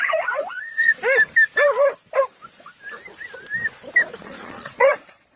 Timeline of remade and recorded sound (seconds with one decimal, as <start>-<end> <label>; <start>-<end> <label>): 0.0-1.0 remade; 1.0-4.2 recorded; 4.2-5.4 remade